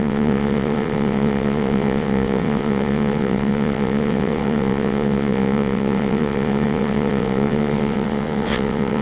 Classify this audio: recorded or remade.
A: remade